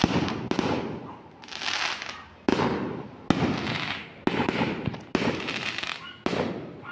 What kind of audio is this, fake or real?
real